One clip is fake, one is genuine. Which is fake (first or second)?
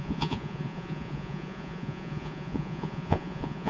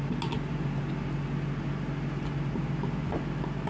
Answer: first